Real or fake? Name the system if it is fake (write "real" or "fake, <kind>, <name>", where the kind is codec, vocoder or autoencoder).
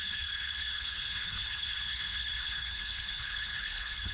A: fake, codec, HILCodec